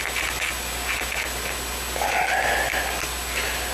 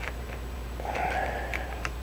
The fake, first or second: second